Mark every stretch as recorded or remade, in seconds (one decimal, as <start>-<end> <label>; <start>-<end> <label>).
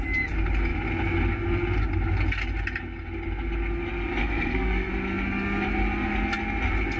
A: 0.0-4.2 recorded; 4.2-4.9 remade; 4.9-7.0 recorded